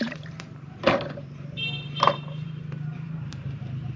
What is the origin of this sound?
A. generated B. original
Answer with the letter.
A